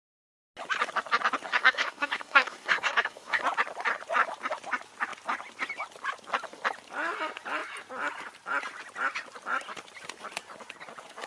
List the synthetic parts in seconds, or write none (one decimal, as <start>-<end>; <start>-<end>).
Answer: 1.5-3.4